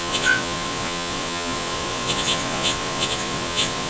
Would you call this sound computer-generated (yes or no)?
yes